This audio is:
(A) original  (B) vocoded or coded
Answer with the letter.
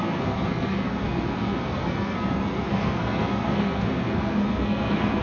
B